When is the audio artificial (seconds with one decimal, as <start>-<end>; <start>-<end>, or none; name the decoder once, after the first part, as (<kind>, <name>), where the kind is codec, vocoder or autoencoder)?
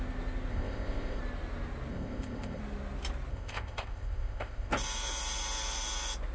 0.5-1.2 (codec, ZipCodec); 1.9-2.6; 3.3-4.7